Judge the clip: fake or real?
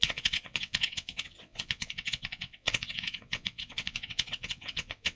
fake